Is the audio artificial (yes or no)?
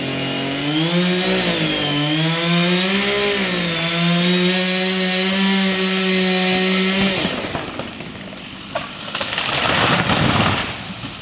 no